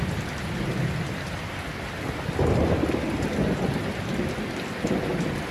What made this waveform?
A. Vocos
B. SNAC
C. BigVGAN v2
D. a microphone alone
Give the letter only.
D